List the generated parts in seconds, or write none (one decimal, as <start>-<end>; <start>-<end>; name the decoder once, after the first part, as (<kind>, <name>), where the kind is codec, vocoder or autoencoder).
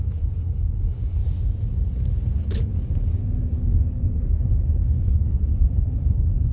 0.0-1.2 (codec, HILCodec); 2.3-3.1; 3.7-6.5